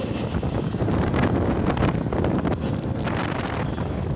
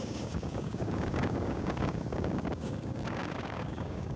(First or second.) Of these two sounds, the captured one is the first